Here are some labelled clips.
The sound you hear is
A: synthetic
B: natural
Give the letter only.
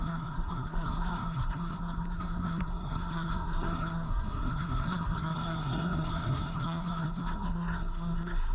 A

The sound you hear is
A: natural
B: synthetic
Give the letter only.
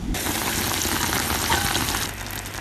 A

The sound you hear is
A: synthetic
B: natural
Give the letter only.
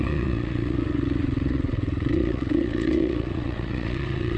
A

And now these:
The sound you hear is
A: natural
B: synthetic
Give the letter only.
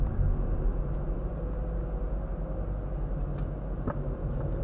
A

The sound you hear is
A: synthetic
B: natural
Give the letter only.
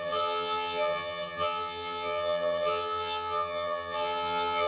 A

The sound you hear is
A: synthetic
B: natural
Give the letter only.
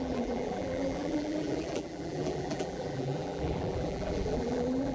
A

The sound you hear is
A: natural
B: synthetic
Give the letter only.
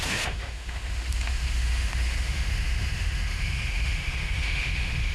B